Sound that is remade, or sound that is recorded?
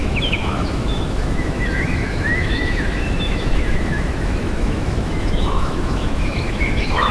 remade